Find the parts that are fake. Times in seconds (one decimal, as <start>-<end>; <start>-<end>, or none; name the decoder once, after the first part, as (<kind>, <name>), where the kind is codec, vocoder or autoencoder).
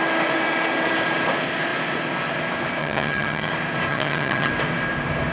2.8-3.5 (vocoder, HiFi-GAN); 3.9-4.5